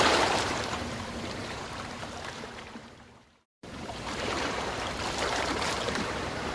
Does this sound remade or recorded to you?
remade